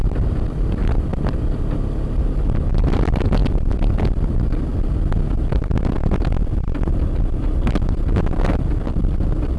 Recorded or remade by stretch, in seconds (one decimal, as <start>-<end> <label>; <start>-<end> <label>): 0.0-1.1 remade; 1.1-2.7 recorded; 2.7-4.7 remade; 4.7-8.9 recorded; 8.9-9.6 remade